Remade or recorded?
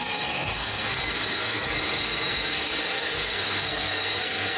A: remade